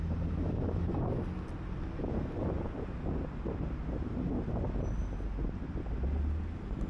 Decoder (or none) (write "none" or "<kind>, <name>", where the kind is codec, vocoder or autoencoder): none